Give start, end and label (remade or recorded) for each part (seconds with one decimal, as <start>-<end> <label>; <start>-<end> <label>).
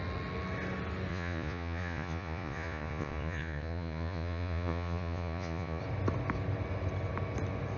0.0-1.1 recorded; 1.1-5.8 remade; 5.8-7.8 recorded